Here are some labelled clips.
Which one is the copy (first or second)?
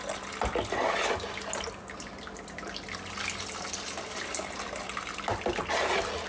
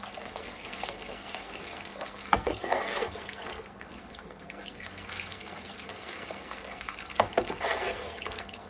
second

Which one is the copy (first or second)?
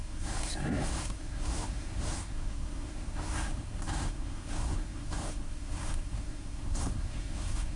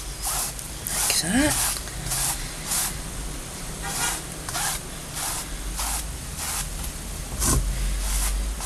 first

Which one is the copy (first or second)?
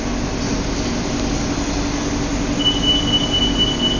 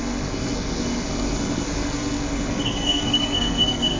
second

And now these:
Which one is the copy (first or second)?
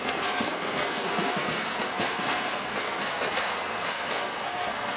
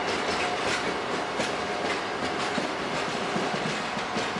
first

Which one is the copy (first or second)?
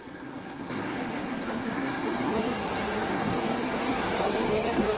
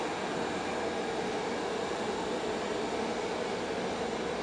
first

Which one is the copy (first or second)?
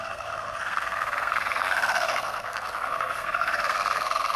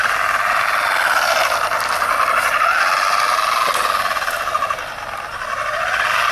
first